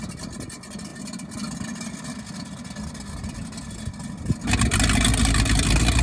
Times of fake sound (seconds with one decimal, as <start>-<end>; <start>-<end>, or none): none